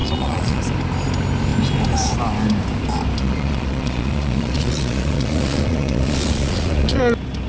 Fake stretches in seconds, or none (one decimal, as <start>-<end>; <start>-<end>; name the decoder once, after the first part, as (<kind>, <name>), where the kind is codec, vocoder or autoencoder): 0.0-0.6 (vocoder, Vocos); 3.2-7.0